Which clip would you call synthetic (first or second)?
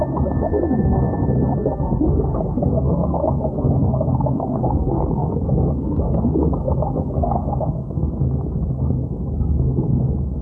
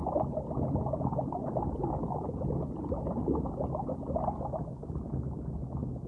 first